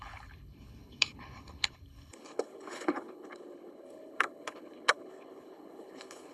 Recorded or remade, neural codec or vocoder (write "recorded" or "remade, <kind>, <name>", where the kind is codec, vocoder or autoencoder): remade, codec, HILCodec